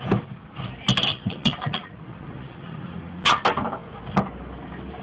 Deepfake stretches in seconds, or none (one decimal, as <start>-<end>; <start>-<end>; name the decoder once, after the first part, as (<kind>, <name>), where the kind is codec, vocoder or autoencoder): 1.1-3.4 (vocoder, Vocos)